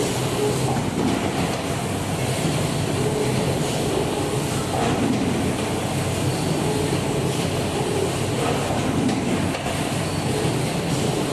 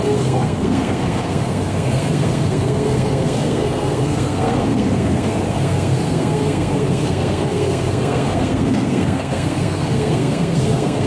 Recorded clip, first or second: first